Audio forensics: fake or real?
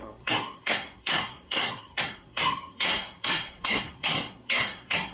fake